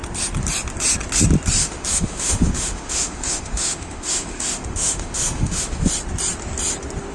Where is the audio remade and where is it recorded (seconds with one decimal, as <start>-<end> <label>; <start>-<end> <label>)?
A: 0.0-1.6 recorded; 1.6-5.9 remade; 5.9-7.1 recorded